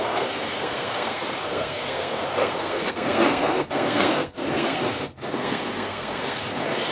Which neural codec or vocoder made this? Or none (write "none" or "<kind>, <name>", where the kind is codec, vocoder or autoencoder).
codec, SNAC